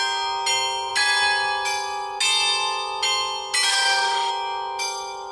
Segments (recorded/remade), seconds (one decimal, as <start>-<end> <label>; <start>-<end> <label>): 0.0-3.7 recorded; 3.7-4.3 remade; 4.3-5.3 recorded